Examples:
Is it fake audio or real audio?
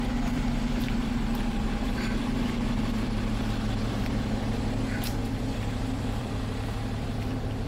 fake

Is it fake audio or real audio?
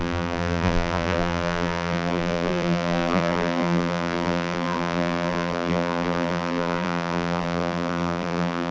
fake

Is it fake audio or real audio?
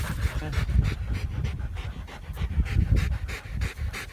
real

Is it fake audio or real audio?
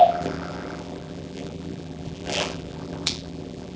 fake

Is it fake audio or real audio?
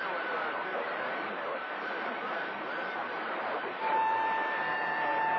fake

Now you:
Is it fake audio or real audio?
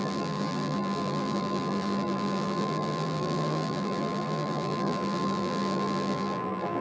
fake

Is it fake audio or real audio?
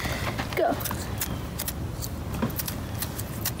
fake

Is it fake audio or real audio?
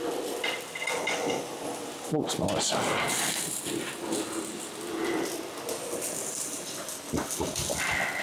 real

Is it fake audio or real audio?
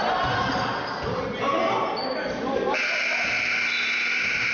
real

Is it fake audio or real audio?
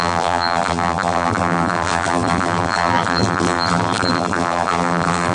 fake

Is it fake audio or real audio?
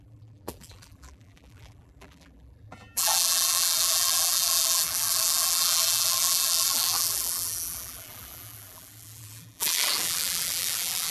fake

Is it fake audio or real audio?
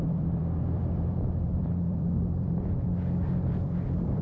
fake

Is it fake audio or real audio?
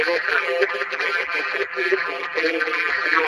fake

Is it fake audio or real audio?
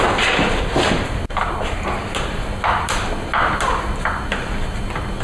fake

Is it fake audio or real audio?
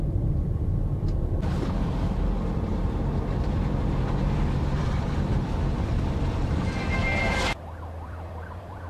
fake